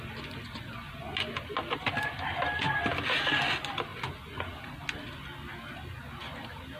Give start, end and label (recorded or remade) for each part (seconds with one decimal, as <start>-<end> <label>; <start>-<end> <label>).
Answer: 0.0-6.8 recorded